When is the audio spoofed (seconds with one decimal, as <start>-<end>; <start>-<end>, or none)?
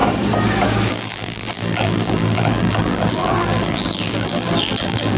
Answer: 0.9-5.2